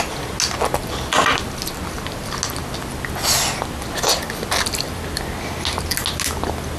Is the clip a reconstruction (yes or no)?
no